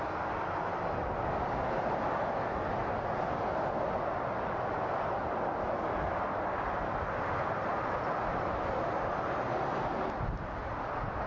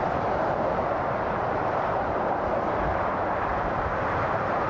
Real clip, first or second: first